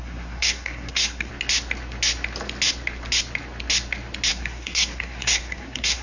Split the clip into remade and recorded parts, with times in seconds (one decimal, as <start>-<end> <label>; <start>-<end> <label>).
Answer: 0.0-1.3 remade; 1.3-4.3 recorded; 4.3-6.0 remade